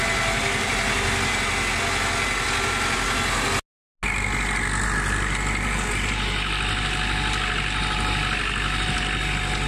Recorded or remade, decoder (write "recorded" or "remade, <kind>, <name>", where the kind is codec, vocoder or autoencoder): recorded